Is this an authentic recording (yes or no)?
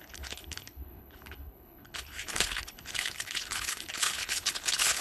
no